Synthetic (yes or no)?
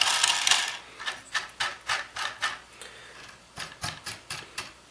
no